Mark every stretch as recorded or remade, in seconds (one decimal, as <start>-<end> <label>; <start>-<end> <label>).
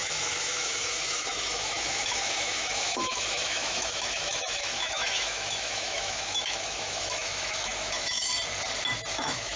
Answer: 0.0-8.3 remade; 8.3-9.1 recorded; 9.1-9.6 remade